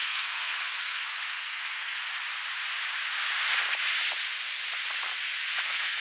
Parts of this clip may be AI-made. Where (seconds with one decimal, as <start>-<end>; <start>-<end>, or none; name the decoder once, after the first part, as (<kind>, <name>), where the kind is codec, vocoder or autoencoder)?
0.0-2.0 (codec, SNAC); 5.6-6.0